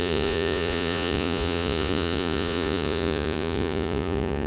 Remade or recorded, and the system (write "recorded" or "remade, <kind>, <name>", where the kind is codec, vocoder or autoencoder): remade, vocoder, Vocos